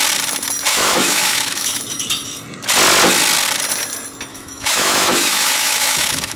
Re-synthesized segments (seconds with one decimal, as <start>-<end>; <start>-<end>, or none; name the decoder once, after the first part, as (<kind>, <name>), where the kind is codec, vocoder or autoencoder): 0.7-1.8 (autoencoder, DAC-VAE); 4.3-6.4